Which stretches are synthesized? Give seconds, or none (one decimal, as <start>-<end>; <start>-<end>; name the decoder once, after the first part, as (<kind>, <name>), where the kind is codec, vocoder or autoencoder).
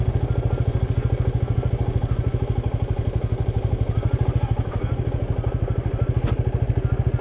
none